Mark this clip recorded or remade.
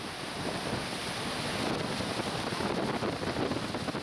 recorded